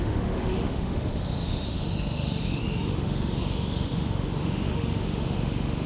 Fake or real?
fake